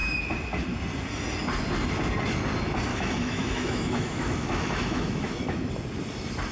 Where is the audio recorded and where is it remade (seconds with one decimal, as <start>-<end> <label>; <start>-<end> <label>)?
0.0-2.9 recorded; 2.9-5.7 remade; 5.7-6.5 recorded